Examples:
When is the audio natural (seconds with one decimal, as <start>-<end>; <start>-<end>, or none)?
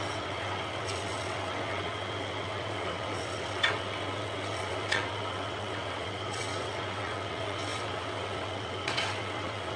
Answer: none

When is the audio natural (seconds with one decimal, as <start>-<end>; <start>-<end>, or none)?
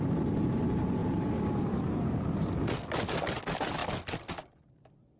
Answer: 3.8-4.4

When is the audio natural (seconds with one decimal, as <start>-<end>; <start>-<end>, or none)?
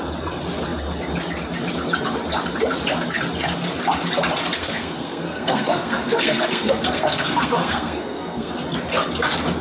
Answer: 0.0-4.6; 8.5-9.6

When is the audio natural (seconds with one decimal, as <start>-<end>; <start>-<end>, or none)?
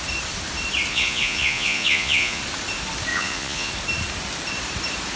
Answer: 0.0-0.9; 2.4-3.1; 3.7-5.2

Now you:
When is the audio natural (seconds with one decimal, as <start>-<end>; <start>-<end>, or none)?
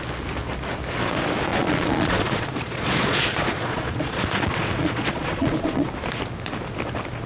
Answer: 0.0-1.5; 5.9-7.3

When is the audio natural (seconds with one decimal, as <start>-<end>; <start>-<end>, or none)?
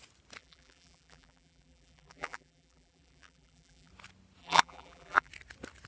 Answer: 0.0-0.4; 3.9-4.4; 5.3-5.9